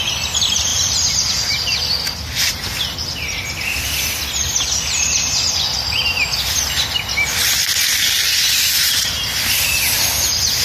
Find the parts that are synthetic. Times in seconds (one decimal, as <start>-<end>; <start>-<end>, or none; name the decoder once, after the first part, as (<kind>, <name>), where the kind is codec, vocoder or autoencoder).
none

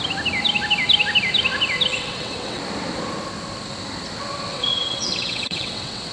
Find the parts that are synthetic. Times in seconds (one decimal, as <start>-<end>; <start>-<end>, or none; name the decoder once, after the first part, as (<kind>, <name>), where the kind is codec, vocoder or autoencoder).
1.9-2.6 (vocoder, WaveNeXt); 4.5-6.1

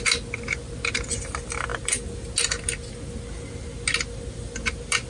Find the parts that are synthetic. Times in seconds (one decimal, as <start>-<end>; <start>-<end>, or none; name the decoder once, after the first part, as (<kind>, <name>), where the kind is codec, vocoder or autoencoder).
none